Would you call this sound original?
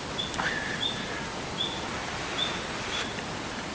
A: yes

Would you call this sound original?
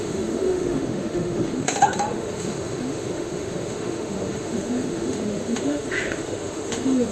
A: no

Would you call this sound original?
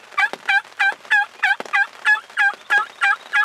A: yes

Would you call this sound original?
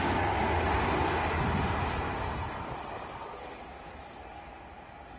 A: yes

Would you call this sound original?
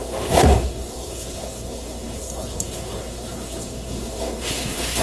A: no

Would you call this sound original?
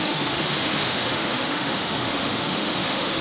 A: no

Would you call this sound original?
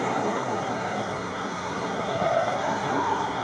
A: no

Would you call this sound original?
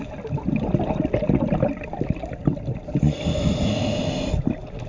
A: yes